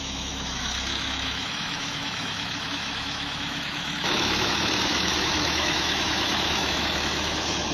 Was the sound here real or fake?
fake